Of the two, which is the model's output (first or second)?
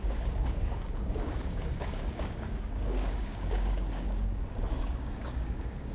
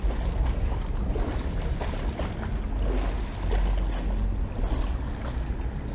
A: first